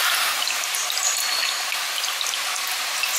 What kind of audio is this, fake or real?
real